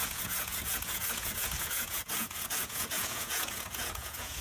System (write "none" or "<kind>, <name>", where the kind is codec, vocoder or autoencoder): vocoder, Vocos